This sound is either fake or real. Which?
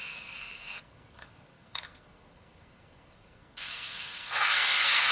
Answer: fake